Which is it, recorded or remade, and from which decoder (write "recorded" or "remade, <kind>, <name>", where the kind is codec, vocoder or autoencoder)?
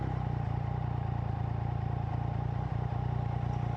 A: recorded